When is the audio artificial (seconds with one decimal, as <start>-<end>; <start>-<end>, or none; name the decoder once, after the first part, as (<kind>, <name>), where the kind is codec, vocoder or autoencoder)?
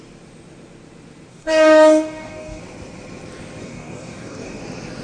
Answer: 1.3-2.6 (codec, DAC); 3.6-4.6